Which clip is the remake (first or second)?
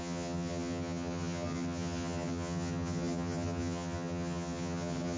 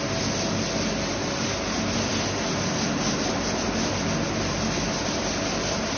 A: first